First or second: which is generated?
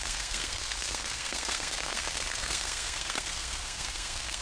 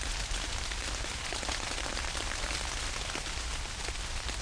first